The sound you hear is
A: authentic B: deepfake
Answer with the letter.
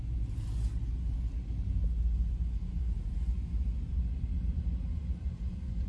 A